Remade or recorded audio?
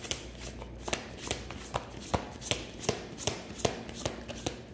recorded